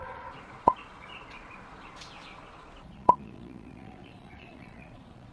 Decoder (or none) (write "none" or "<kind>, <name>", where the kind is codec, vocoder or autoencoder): vocoder, Vocos